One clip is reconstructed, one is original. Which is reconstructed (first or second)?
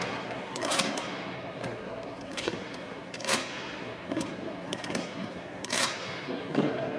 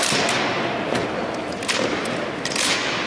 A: first